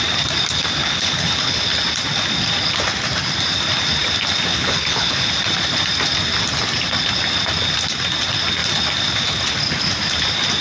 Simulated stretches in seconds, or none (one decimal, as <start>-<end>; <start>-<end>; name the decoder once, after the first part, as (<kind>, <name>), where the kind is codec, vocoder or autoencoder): 0.8-1.6 (codec, HILCodec); 4.5-5.3